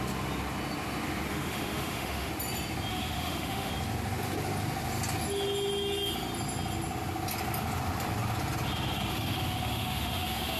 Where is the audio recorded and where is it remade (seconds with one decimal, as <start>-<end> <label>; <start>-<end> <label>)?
0.0-1.3 recorded; 1.3-2.3 remade; 2.3-2.9 recorded; 2.9-3.7 remade; 3.7-9.1 recorded; 9.1-10.6 remade